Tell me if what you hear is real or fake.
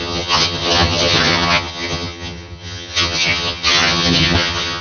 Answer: fake